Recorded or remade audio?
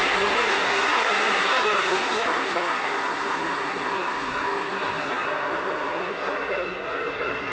remade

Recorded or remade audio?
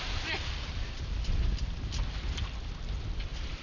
recorded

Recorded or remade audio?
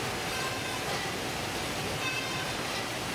recorded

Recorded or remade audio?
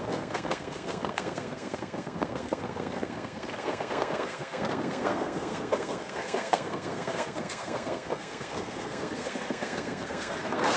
remade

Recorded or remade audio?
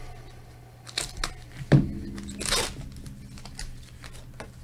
recorded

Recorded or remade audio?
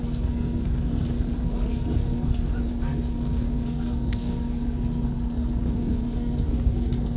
remade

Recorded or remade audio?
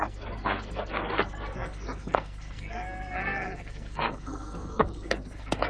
remade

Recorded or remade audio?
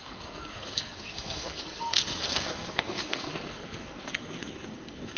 remade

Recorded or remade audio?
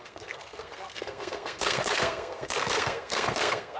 remade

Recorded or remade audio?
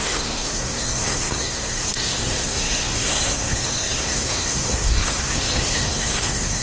remade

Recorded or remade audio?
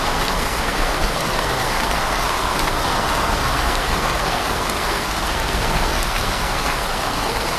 remade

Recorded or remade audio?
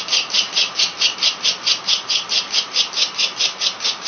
recorded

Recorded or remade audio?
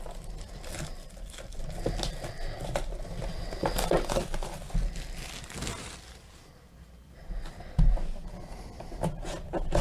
recorded